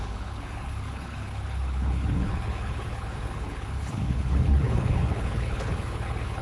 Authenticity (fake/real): fake